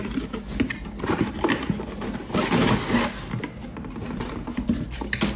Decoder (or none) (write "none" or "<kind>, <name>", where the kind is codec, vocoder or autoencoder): none